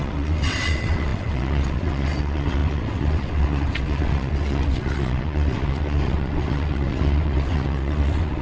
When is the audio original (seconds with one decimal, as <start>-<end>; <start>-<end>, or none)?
none